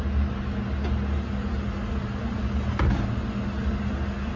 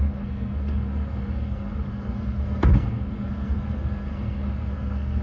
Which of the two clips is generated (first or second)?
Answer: second